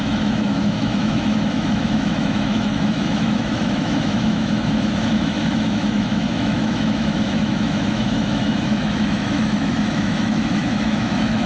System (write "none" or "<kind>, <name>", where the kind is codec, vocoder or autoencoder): autoencoder, DAC-VAE